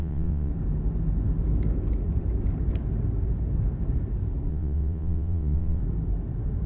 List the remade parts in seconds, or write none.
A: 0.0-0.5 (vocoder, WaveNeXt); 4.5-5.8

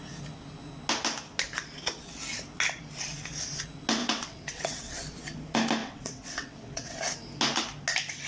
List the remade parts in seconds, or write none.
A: 4.0-4.9 (vocoder, WaveNeXt); 5.8-7.0

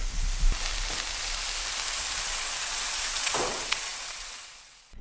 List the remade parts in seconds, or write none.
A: 2.2-5.0 (vocoder, WaveNeXt)

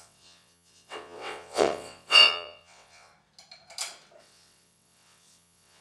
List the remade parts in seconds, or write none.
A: 0.0-3.1 (vocoder, WaveNeXt); 4.2-5.8

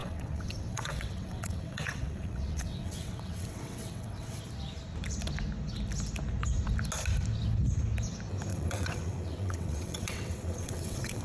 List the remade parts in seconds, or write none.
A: 0.0-4.4 (vocoder, WaveNeXt); 8.5-11.2

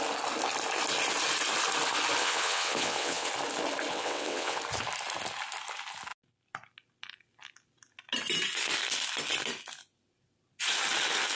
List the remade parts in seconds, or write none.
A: 2.2-3.3 (vocoder, WaveNeXt); 3.9-4.6

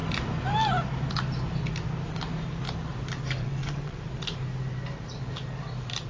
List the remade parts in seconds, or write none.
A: 3.4-4.0 (vocoder, WaveNeXt)